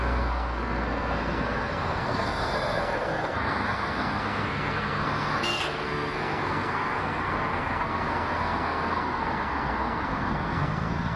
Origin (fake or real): fake